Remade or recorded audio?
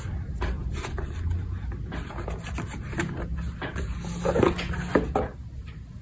recorded